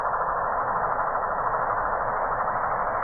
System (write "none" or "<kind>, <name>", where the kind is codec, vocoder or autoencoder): autoencoder, DAC-VAE